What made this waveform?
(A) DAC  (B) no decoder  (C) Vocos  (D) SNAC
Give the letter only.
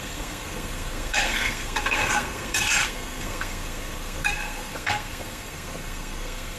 D